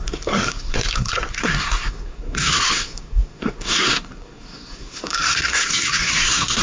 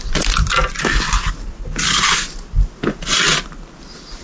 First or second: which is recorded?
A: second